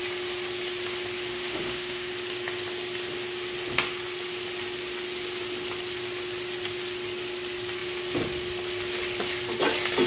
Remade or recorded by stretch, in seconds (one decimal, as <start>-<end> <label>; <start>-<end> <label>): 0.0-1.3 recorded; 1.3-2.1 remade; 2.1-10.1 recorded